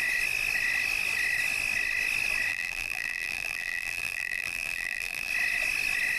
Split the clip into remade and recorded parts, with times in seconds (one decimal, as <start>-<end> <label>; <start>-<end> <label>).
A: 0.0-2.5 recorded; 2.5-5.3 remade; 5.3-6.2 recorded